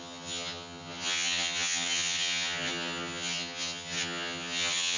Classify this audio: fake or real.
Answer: fake